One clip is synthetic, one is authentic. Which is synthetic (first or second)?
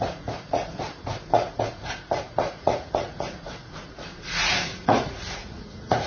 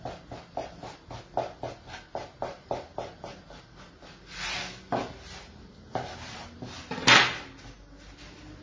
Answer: first